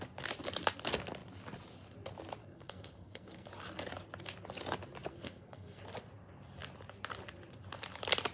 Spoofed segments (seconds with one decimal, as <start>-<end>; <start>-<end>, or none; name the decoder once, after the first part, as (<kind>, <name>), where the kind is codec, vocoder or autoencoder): 2.4-3.5 (codec, SNAC); 5.1-5.8